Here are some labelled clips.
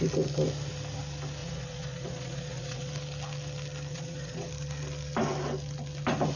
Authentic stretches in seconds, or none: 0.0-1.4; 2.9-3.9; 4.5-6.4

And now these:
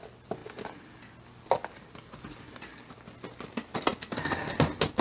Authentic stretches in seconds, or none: 0.0-5.0

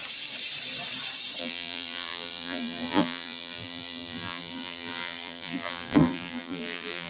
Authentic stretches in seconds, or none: 0.0-1.4

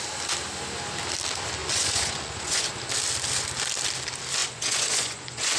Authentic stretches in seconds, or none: 0.0-1.6; 2.7-4.4